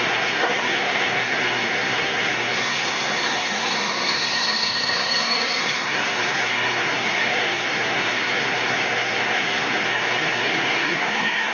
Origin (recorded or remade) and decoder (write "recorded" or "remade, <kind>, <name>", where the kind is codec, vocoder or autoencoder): remade, codec, SNAC